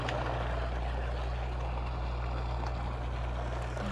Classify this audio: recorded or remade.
recorded